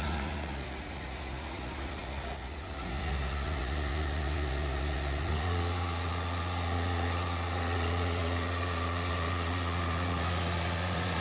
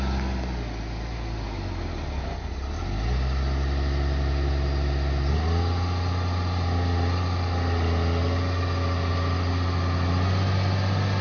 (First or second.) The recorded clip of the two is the second